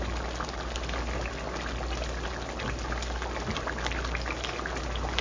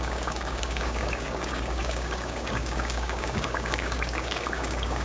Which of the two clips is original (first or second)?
first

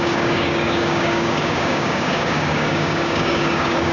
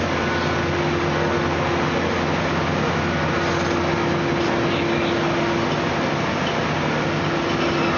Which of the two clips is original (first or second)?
second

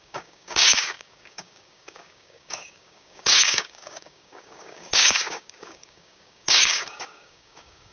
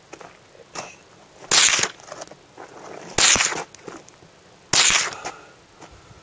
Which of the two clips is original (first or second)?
second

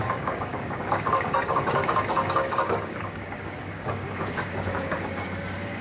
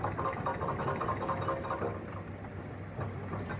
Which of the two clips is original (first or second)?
second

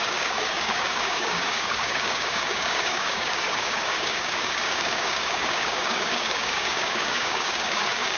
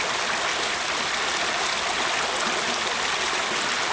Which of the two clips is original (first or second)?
second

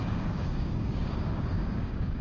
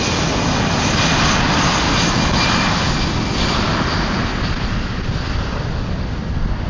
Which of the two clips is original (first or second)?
second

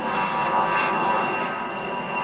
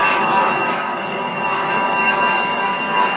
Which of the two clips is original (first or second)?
first